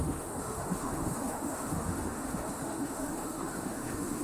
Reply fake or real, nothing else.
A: fake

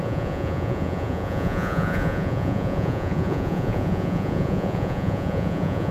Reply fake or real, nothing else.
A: fake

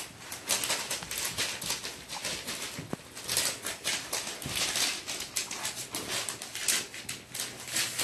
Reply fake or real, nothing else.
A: real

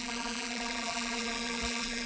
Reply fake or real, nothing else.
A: fake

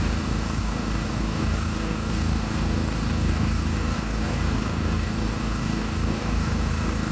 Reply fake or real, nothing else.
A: fake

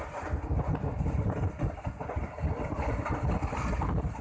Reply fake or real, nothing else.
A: real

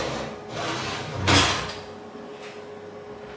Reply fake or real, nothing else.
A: real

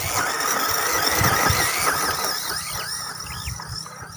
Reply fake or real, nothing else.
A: real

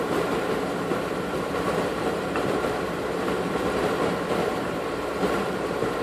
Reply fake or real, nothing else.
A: fake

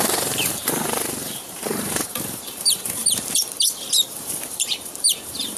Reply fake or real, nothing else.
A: fake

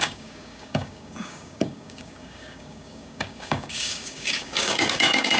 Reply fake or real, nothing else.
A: fake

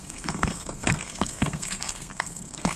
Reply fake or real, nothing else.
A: fake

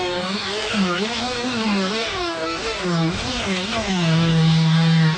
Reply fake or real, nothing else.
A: fake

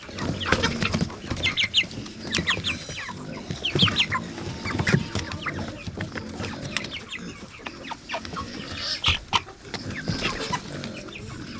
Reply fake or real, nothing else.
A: real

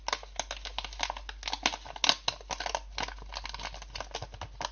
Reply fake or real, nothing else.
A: real